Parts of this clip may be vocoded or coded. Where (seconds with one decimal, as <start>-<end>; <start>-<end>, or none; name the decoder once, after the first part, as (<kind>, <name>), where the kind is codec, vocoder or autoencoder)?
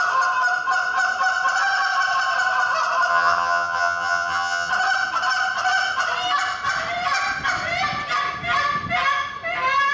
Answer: 3.1-4.7 (vocoder, HiFi-GAN)